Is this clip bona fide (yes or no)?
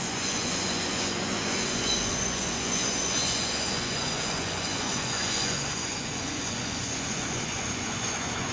no